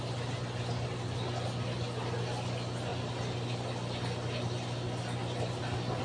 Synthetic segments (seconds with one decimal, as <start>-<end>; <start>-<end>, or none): none